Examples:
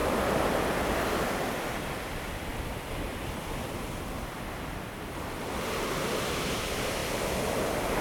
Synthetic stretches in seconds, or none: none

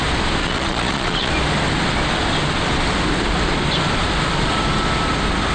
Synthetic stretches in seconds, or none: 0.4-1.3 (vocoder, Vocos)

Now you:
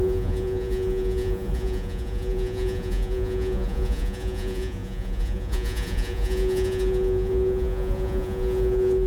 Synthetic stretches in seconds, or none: 0.0-9.1 (vocoder, Vocos)

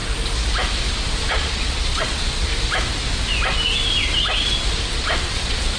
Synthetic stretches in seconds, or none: 1.3-2.5 (vocoder, Vocos); 4.9-5.8

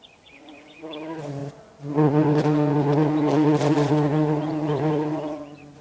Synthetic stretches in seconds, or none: 0.0-5.8 (vocoder, Vocos)